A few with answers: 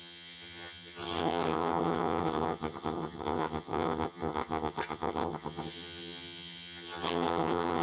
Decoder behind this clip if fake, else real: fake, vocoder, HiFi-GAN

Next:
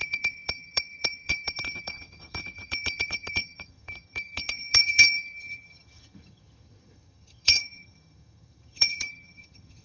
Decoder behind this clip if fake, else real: fake, vocoder, HiFi-GAN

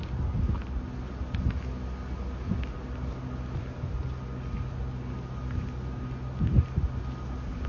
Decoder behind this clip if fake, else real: real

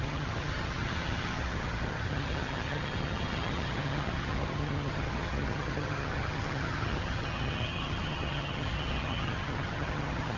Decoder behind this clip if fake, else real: fake, vocoder, HiFi-GAN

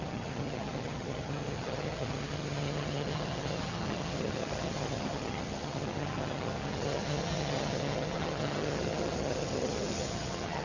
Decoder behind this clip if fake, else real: fake, vocoder, HiFi-GAN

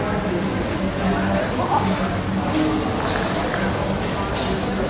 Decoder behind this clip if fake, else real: real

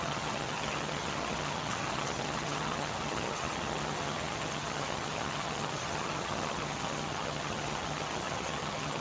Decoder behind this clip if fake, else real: fake, vocoder, HiFi-GAN